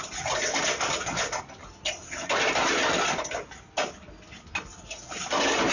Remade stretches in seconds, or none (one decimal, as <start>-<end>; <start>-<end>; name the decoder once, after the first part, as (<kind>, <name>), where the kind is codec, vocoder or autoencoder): none